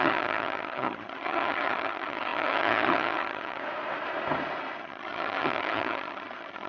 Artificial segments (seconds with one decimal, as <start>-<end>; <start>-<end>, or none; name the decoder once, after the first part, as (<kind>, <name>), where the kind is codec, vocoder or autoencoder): 0.0-3.6 (vocoder, HiFi-GAN); 4.8-6.7